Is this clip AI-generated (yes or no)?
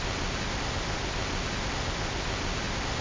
no